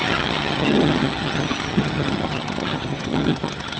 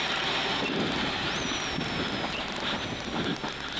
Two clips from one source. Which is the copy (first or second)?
first